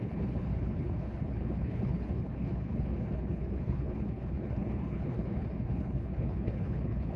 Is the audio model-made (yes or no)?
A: yes